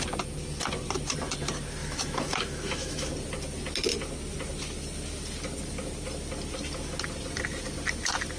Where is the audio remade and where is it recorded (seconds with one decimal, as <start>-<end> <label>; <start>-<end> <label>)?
0.0-1.8 recorded; 1.8-3.1 remade; 3.1-8.4 recorded